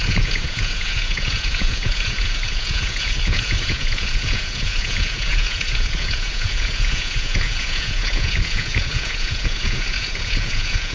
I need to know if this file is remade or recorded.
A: remade